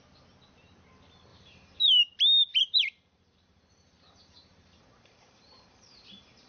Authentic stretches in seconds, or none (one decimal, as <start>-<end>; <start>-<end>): 0.0-1.3; 2.0-2.5